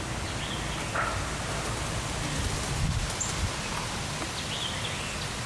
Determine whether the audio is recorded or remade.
recorded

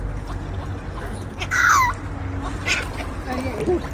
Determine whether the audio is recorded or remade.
recorded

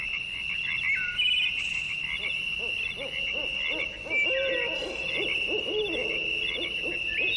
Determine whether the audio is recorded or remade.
recorded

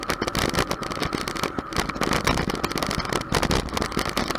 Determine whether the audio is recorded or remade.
recorded